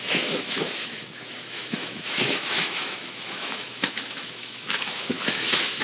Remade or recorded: remade